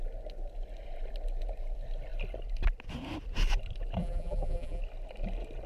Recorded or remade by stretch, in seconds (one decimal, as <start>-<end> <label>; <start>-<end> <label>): 0.0-4.0 recorded; 4.0-4.8 remade; 4.8-5.7 recorded